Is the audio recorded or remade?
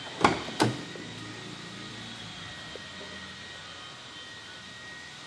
recorded